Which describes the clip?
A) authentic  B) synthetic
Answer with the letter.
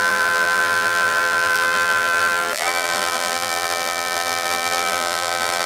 B